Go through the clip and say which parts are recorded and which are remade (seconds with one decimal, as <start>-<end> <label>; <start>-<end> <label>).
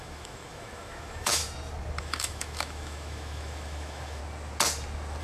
0.0-1.4 remade; 1.4-2.0 recorded; 2.0-4.2 remade; 4.2-5.2 recorded